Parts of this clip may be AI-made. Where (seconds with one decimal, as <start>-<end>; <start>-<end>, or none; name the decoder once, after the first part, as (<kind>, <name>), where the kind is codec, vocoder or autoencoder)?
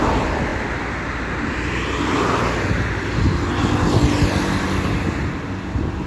none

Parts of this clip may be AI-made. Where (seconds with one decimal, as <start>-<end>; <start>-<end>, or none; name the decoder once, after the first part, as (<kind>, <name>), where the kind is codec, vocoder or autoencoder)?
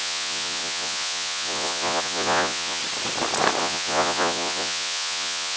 0.0-2.8 (vocoder, Vocos); 3.6-5.6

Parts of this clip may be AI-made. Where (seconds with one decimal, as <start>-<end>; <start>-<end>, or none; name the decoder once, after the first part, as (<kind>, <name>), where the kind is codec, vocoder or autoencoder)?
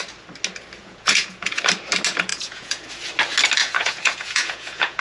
0.8-1.6 (vocoder, Vocos); 2.3-2.8; 3.6-5.0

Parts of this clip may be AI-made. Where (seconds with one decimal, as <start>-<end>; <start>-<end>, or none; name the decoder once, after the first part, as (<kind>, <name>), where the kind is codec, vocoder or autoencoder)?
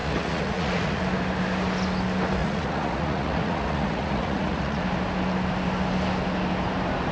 0.0-1.0 (vocoder, Vocos); 2.4-4.8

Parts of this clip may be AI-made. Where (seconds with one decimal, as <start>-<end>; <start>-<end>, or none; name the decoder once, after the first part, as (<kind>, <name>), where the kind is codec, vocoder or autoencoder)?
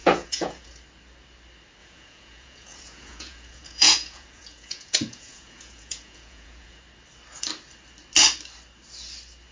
0.0-0.7 (vocoder, Vocos); 1.8-6.8